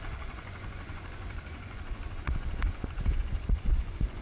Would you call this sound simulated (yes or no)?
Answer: yes